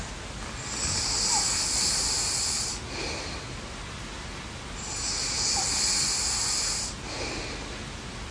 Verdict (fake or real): real